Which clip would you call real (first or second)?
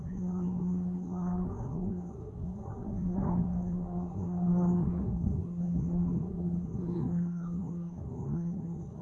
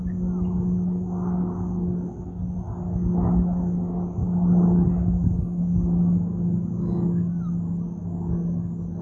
second